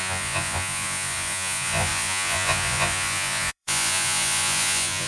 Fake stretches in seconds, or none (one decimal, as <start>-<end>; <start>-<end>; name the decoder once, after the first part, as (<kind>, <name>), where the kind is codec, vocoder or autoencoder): 0.0-5.1 (vocoder, Vocos)